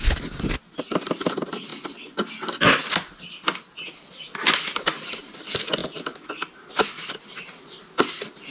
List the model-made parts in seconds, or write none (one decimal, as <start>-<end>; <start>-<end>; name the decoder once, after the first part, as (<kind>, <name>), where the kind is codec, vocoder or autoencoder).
none